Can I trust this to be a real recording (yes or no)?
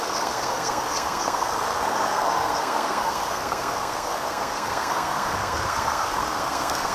no